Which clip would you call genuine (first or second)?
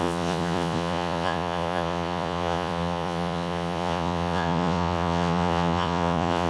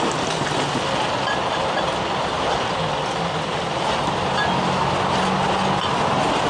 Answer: second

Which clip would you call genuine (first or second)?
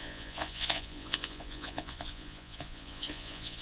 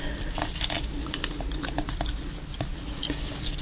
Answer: second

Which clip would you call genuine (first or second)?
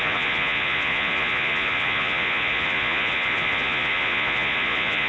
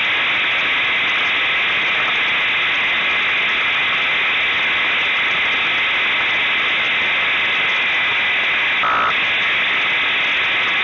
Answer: second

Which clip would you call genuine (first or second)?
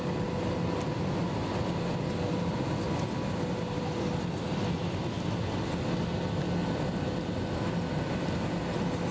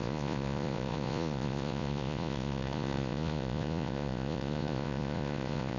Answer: first